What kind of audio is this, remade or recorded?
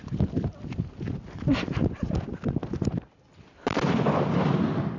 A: recorded